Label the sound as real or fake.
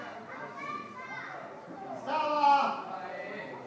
real